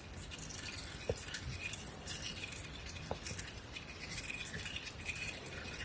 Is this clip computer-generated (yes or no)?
no